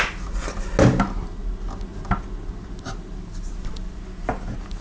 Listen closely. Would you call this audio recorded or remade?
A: recorded